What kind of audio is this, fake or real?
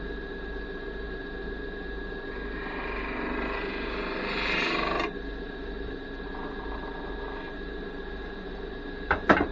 fake